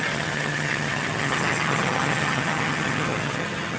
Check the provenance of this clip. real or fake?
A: fake